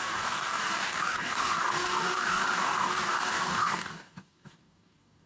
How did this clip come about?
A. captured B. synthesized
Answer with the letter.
B